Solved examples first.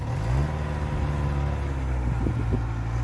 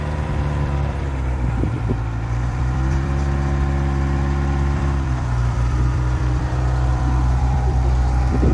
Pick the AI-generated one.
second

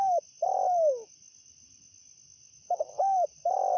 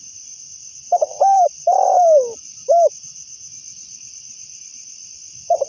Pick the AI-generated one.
second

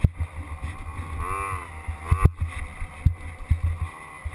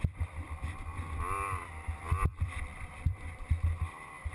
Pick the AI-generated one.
second